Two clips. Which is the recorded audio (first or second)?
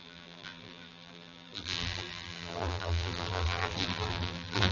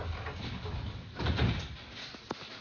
second